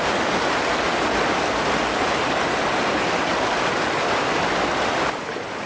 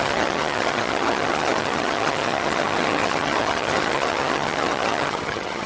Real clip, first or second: first